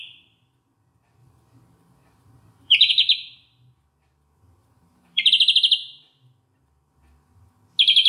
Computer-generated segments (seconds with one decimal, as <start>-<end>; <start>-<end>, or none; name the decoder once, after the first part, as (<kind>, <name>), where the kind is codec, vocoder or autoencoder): 1.2-2.9 (vocoder, BigVGAN v2); 4.6-5.3